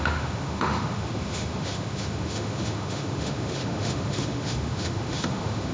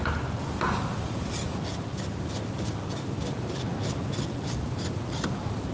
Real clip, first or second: second